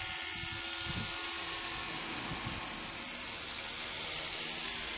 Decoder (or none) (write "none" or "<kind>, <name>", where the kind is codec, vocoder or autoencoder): none